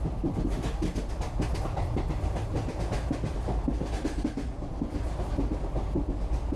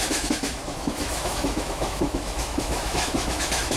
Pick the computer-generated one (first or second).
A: second